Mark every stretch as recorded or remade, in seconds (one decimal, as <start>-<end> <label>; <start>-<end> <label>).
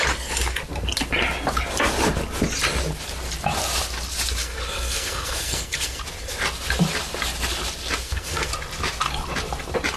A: 0.0-4.4 recorded; 4.4-6.0 remade; 6.0-8.0 recorded; 8.0-8.5 remade; 8.5-10.0 recorded